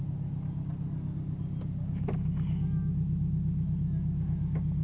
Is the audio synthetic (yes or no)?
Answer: no